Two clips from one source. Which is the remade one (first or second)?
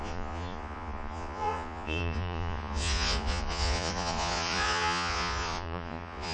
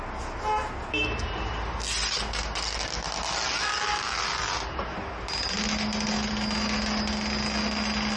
first